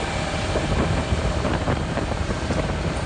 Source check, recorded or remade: remade